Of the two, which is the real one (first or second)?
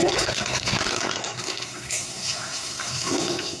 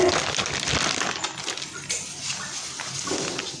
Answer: second